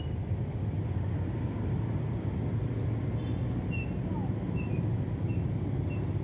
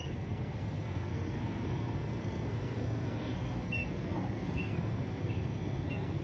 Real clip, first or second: first